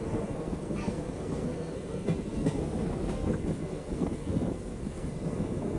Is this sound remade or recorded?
remade